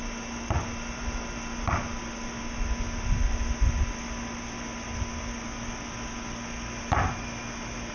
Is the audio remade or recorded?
recorded